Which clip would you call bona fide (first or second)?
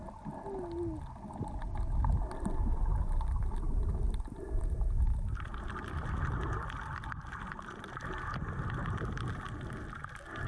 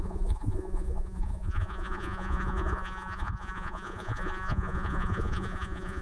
first